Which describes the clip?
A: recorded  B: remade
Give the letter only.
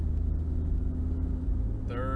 A